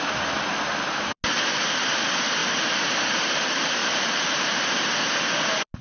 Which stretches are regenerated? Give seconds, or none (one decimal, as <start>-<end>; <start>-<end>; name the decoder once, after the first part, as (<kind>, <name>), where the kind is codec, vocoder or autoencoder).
3.8-4.6 (vocoder, BigVGAN v2)